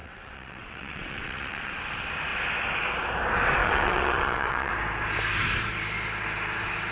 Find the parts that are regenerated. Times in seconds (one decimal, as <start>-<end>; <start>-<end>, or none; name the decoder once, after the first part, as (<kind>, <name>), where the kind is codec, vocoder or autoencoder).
0.0-1.7 (vocoder, WaveNeXt); 3.6-4.7